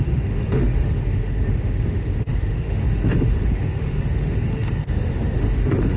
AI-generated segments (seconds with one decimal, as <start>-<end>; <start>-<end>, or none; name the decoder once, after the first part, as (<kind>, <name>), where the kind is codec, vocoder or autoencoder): 0.0-6.0 (autoencoder, DAC-VAE)